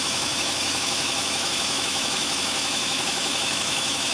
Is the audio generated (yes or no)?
yes